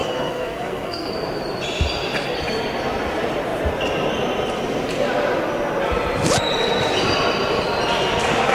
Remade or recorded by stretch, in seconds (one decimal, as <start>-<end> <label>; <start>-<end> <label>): 0.0-1.1 remade; 1.1-8.5 recorded